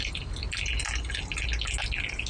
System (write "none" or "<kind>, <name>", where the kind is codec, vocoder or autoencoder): none